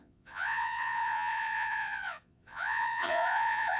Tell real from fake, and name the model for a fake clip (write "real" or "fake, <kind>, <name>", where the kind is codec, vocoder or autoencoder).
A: fake, vocoder, Vocos